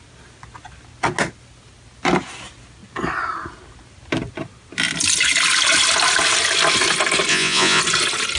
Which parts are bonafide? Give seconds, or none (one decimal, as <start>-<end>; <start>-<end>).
0.0-7.3; 7.8-8.4

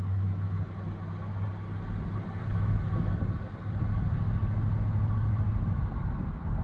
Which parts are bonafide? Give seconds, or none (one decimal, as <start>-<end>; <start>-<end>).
0.0-2.4; 3.1-6.6

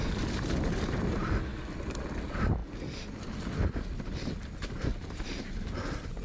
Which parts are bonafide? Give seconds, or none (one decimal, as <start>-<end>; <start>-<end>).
0.0-6.2

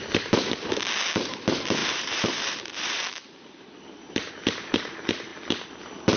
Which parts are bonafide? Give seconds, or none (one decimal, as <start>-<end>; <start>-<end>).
0.0-1.8; 4.3-6.2